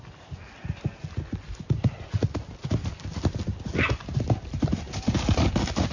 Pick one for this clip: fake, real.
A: real